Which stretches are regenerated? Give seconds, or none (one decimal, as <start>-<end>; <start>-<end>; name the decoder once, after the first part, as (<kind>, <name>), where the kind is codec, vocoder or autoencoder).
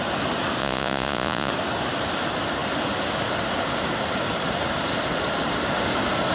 0.6-1.5 (vocoder, Vocos)